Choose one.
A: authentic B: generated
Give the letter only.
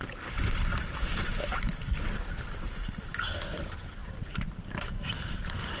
A